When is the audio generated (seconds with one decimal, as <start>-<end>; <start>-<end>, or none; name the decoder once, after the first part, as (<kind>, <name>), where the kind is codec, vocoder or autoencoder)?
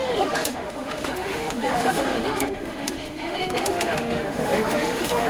0.0-5.3 (autoencoder, DAC-VAE)